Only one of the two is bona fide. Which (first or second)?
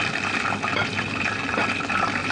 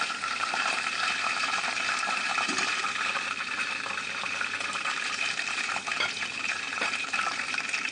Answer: first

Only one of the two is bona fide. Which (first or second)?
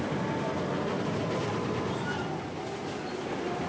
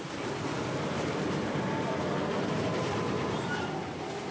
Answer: first